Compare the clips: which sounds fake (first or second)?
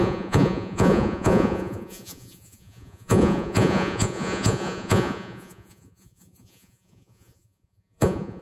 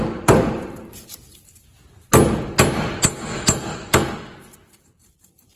first